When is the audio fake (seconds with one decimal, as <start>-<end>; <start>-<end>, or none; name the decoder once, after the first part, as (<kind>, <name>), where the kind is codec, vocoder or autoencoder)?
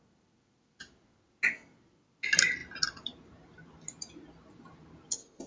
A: none